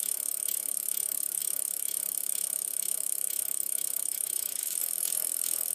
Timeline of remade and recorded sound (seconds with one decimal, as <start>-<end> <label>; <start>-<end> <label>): 0.0-5.7 remade